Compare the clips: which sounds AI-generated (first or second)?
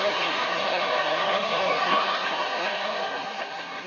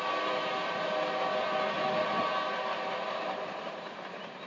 first